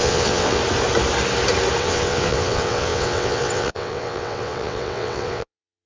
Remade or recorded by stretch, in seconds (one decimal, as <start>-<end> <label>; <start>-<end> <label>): 0.0-0.6 remade; 0.6-1.8 recorded; 1.8-5.9 remade